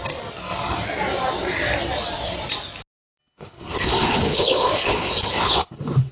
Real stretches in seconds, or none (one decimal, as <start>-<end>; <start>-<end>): 0.0-3.2